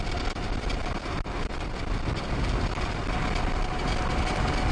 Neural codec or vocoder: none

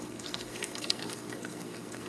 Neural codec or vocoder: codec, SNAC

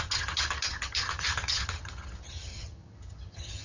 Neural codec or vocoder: vocoder, HiFi-GAN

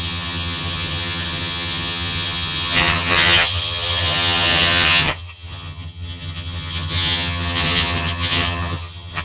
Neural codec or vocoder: vocoder, HiFi-GAN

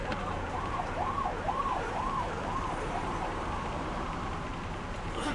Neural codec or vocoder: vocoder, BigVGAN v2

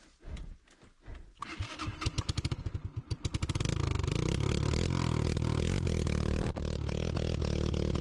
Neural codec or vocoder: none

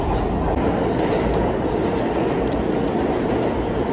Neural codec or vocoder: none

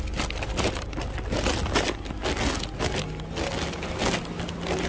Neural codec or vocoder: none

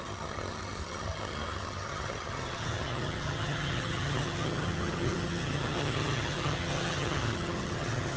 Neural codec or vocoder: vocoder, HiFi-GAN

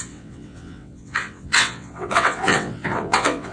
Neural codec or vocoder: vocoder, WaveNeXt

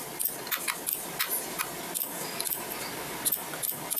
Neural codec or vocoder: none